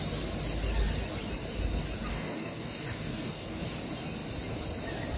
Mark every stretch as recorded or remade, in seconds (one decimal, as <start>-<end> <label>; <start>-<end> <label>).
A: 0.0-2.1 recorded; 2.1-3.6 remade; 3.6-5.2 recorded